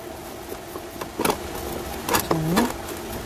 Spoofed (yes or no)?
no